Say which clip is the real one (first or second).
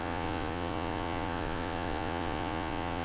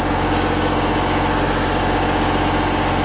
second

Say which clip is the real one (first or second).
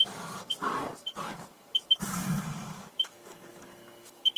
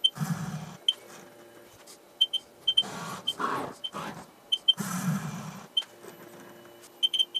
second